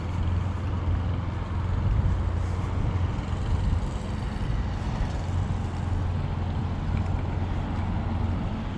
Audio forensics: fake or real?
real